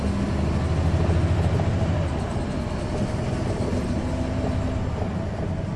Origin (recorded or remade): recorded